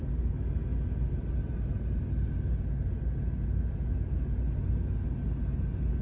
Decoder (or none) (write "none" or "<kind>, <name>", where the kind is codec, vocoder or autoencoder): none